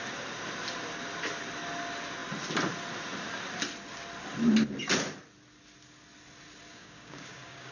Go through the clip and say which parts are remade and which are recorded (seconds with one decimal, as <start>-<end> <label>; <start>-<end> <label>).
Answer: 0.0-6.7 recorded; 6.7-7.7 remade